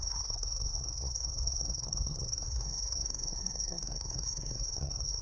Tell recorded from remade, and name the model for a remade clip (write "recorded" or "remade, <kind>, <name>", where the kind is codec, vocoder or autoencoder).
remade, codec, SNAC